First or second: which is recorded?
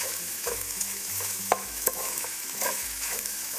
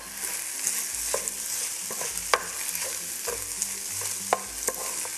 second